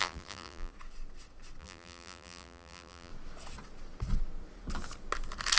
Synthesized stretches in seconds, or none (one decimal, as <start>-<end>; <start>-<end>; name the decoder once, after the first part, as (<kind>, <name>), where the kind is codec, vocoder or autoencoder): 0.0-0.7 (vocoder, BigVGAN v2); 1.6-3.1